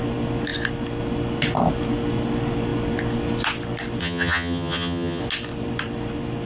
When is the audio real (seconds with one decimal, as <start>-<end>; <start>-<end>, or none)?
0.0-4.0; 5.2-6.5